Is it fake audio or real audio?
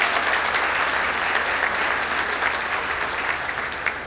real